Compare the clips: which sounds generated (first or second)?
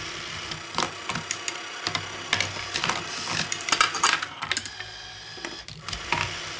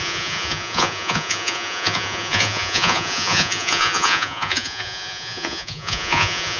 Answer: second